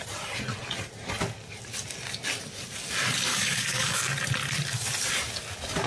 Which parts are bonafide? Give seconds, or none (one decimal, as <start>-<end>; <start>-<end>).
0.0-3.3; 4.0-5.9